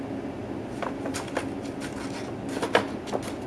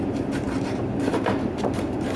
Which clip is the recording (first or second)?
first